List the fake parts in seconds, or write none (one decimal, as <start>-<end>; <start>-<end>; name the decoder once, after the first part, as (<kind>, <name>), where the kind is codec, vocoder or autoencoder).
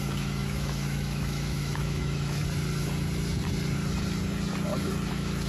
0.0-2.4 (autoencoder, DAC-VAE); 5.1-5.5